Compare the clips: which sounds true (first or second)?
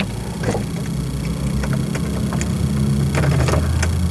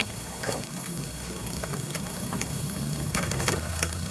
first